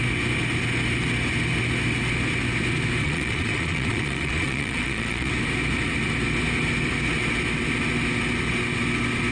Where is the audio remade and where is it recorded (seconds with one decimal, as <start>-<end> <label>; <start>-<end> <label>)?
0.0-3.0 recorded; 3.0-5.3 remade; 5.3-9.3 recorded